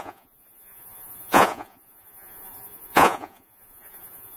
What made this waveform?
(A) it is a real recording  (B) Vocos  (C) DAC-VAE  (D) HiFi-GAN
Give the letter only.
B